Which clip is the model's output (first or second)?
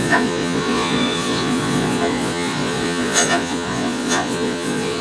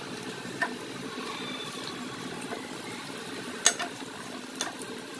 first